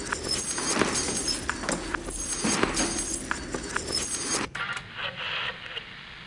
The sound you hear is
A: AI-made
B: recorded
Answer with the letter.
B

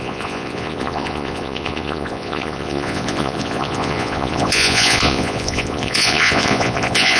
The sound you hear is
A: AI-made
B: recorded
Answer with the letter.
A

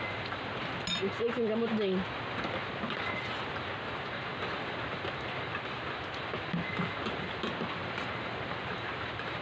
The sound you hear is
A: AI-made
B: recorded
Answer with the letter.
B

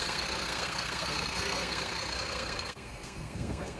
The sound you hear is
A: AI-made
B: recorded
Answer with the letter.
A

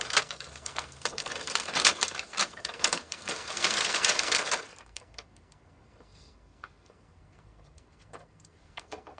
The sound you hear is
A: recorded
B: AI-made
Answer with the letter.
B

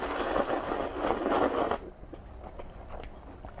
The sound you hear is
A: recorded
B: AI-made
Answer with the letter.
A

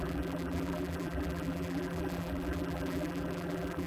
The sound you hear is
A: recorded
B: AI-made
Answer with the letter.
B